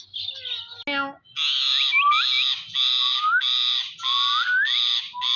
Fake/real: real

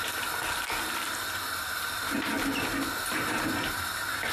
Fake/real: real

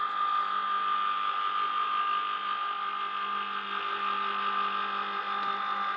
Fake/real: real